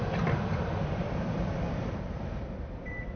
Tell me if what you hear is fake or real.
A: fake